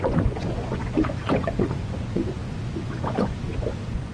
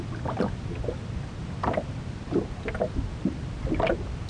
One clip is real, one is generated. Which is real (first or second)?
second